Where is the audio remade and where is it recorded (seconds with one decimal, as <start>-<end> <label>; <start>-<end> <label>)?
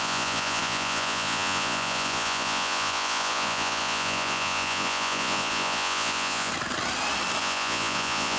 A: 0.0-6.5 remade; 6.5-7.4 recorded; 7.4-8.4 remade